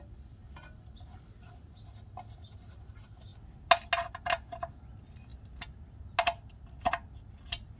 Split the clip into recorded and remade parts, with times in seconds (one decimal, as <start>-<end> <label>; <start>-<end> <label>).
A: 0.0-7.8 recorded